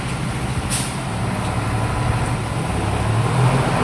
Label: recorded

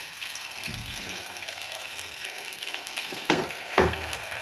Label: remade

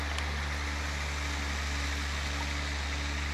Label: recorded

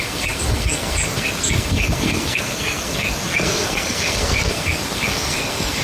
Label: remade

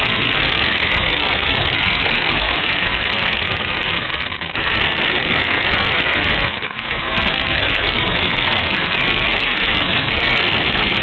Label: remade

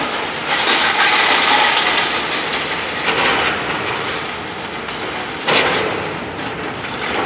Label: recorded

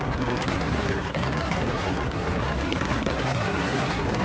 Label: remade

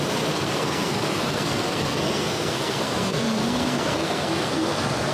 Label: remade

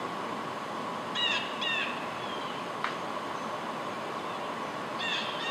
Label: recorded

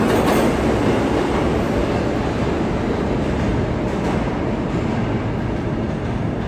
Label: recorded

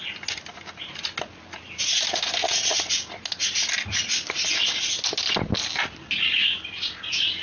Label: recorded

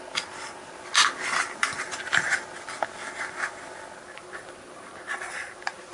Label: recorded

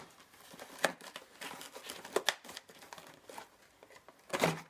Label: recorded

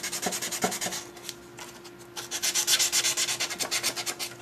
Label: recorded